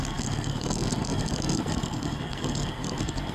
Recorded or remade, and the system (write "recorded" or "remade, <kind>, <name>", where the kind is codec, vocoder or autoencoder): remade, codec, SNAC